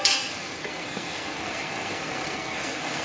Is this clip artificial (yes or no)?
yes